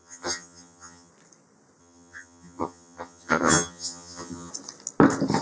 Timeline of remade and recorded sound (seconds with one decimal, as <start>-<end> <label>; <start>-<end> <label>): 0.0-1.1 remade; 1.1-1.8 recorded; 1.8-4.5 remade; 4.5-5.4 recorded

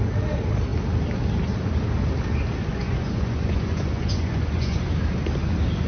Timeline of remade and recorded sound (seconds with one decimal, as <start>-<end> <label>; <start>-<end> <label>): 0.0-2.7 recorded; 2.7-4.8 remade; 4.8-5.9 recorded

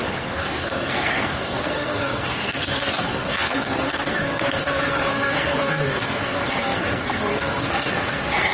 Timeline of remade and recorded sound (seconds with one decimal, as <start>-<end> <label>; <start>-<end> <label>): 0.0-8.5 remade

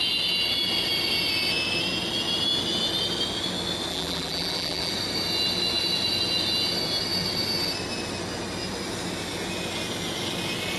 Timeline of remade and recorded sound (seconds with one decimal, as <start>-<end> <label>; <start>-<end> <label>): 0.0-3.9 recorded; 3.9-4.9 remade; 4.9-10.8 recorded

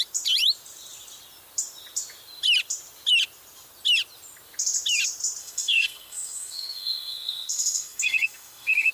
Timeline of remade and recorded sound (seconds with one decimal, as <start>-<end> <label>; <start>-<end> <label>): 0.0-5.4 recorded; 5.4-8.9 remade

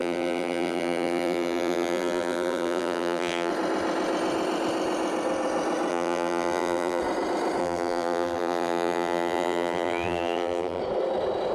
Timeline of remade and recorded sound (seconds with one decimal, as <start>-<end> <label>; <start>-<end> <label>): 0.0-3.5 remade; 3.5-5.9 recorded; 5.9-7.0 remade; 7.0-7.6 recorded; 7.6-10.8 remade; 10.8-11.5 recorded

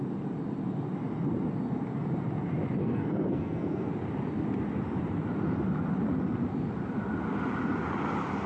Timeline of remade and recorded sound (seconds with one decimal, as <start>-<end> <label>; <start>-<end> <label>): 0.0-2.8 recorded; 2.8-3.9 remade; 3.9-8.5 recorded

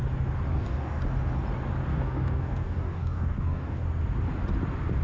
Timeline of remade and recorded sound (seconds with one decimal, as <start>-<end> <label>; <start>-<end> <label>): 0.0-0.5 recorded; 0.5-1.0 remade; 1.0-1.9 recorded; 1.9-3.8 remade; 3.8-5.0 recorded